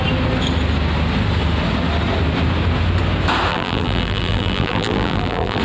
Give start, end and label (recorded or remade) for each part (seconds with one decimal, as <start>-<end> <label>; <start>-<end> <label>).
0.0-3.5 recorded; 3.5-5.6 remade